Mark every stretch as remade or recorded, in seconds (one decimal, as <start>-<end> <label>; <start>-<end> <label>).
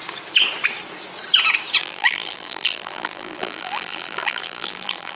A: 0.0-1.8 recorded; 1.8-5.2 remade